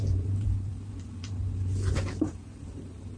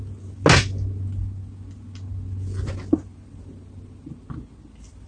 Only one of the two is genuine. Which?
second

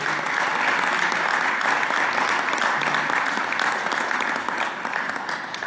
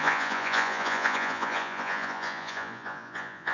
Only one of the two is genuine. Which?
first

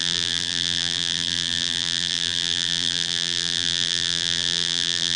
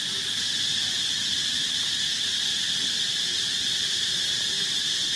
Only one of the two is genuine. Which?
second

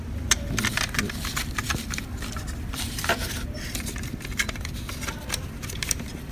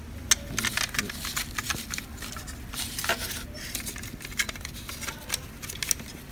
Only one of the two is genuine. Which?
second